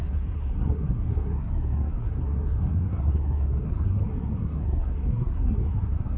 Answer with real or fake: fake